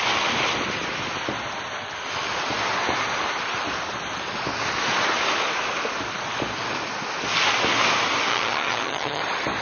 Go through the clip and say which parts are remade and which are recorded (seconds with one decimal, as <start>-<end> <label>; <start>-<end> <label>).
0.0-8.3 recorded; 8.3-9.2 remade; 9.2-9.6 recorded